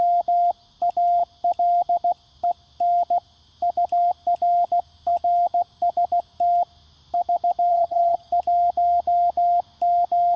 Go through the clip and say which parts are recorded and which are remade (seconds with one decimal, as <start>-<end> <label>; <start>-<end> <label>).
0.0-7.7 recorded; 7.7-8.3 remade; 8.3-10.4 recorded